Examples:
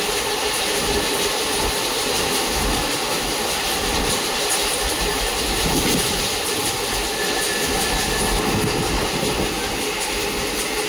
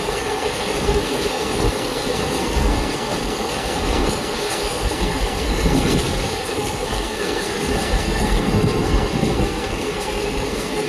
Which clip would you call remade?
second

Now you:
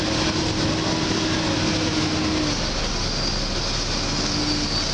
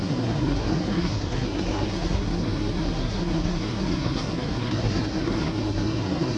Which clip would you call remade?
second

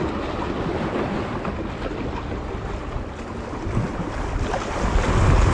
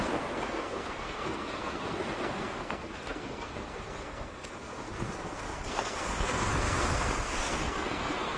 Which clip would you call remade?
second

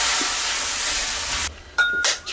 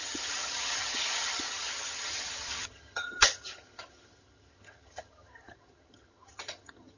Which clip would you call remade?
second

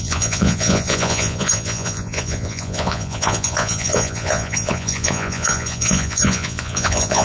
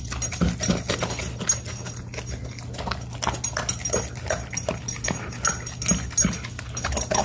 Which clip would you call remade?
first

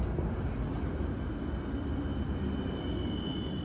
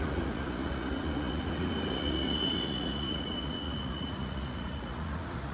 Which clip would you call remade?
second